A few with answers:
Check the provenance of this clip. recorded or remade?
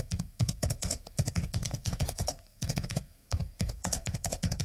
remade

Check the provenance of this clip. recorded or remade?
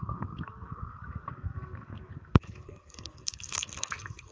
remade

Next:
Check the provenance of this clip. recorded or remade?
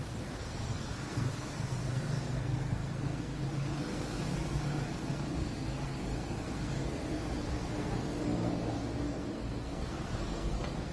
remade